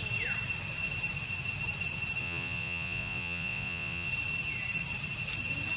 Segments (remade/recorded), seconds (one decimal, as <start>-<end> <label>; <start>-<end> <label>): 0.0-2.2 recorded; 2.2-4.1 remade; 4.1-5.8 recorded